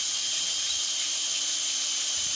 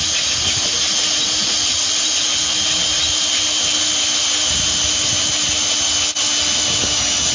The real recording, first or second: second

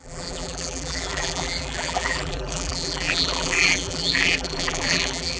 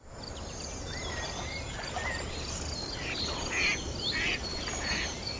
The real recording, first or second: second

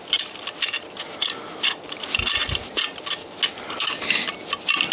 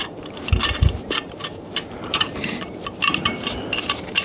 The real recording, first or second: first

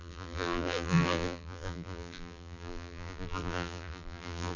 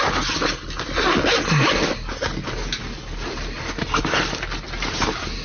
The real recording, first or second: second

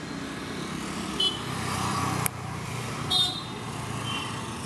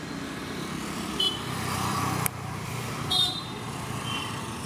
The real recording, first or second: first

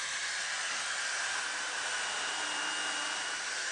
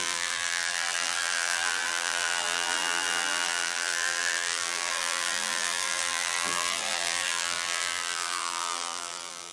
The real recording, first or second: first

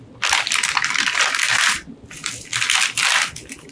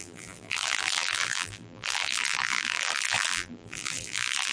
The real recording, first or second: first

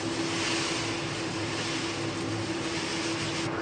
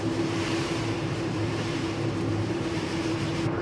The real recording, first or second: first